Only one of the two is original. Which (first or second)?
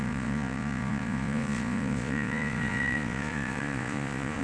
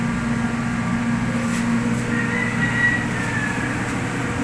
second